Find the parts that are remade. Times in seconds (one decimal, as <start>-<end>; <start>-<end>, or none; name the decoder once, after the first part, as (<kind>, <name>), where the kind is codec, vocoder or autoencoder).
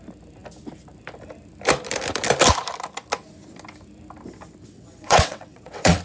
4.6-6.0 (vocoder, WaveNeXt)